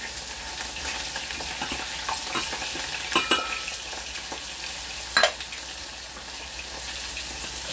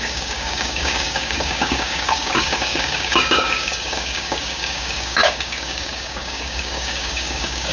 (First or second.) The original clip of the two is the first